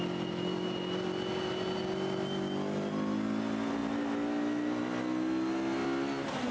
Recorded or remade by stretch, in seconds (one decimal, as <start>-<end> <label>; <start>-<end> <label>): 0.0-6.5 recorded